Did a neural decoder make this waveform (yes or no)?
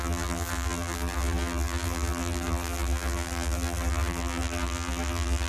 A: yes